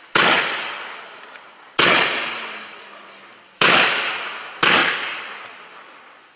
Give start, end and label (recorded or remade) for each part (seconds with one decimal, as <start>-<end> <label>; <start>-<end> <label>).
0.0-6.4 recorded